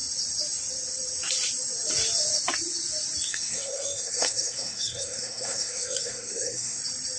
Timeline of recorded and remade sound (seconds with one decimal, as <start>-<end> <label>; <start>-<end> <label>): 0.0-3.3 recorded; 3.3-6.8 remade; 6.8-7.2 recorded